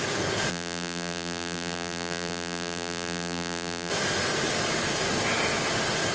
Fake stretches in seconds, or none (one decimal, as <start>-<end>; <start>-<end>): 0.5-3.9